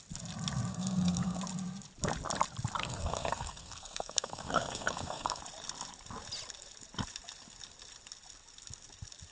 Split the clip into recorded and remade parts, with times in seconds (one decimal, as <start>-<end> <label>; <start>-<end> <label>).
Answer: 0.0-0.7 recorded; 0.7-1.4 remade; 1.4-2.8 recorded; 2.8-5.4 remade; 5.4-9.3 recorded